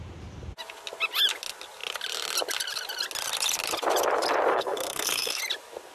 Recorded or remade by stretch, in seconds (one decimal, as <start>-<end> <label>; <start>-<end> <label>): 0.0-4.5 recorded; 4.5-5.4 remade; 5.4-5.9 recorded